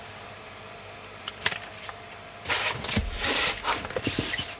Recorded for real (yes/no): no